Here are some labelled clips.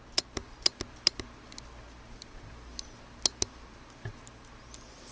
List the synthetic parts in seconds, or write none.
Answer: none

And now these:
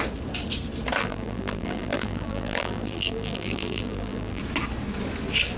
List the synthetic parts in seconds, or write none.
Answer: 1.0-4.4 (vocoder, BigVGAN v2)